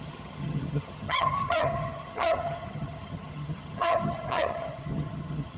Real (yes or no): no